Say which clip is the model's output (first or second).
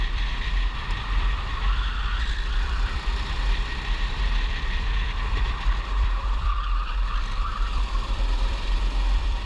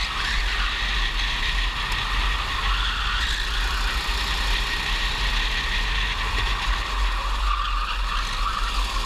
first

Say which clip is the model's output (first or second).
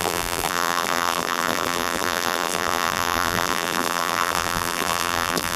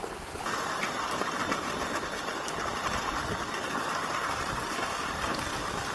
first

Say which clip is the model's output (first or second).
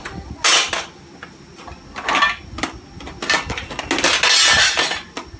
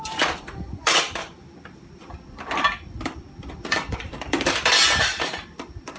second